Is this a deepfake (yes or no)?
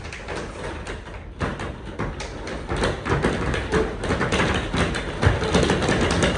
no